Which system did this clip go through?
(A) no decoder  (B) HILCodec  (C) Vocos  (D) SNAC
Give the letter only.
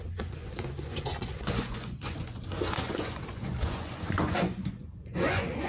C